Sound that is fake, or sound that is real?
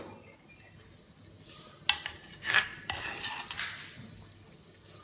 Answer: real